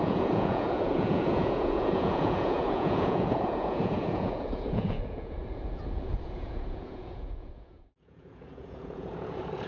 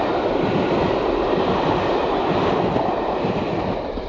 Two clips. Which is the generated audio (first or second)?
first